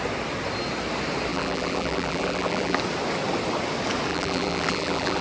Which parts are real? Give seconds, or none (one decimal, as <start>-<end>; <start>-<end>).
0.0-1.3; 2.8-4.1